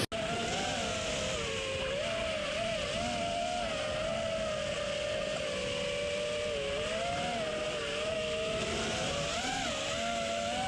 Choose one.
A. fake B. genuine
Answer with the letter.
B